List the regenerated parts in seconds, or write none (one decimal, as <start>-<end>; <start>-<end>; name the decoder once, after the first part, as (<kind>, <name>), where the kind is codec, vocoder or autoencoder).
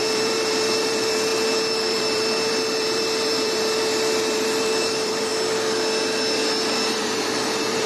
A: 0.0-5.3 (vocoder, BigVGAN v2); 6.9-7.9